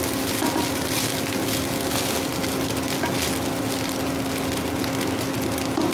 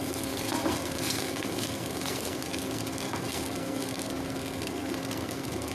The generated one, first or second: second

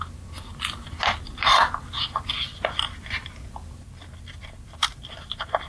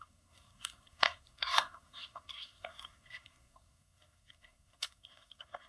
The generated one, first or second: second